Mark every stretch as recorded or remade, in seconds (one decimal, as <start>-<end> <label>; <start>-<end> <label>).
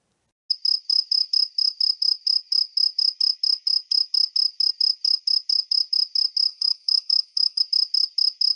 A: 0.0-6.5 recorded; 6.5-7.6 remade; 7.6-8.6 recorded